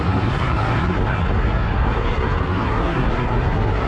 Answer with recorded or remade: remade